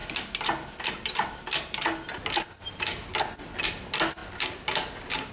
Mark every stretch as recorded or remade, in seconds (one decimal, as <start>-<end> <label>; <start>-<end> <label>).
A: 0.0-5.3 recorded